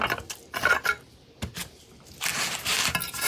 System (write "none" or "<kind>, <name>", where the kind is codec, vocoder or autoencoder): none